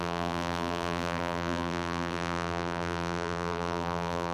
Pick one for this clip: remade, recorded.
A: remade